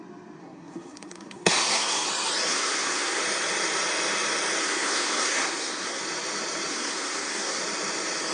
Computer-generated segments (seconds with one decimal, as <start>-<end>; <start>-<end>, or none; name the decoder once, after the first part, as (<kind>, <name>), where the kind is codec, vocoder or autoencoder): 0.4-2.1 (codec, SNAC); 2.5-3.2; 4.6-6.0; 6.7-7.6